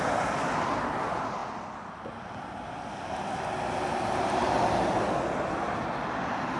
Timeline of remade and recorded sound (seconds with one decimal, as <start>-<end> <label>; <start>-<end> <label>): 0.0-6.6 recorded